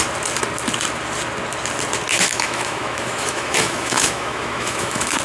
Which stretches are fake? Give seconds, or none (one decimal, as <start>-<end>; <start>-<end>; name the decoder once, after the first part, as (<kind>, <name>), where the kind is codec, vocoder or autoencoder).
2.1-5.2 (autoencoder, DAC-VAE)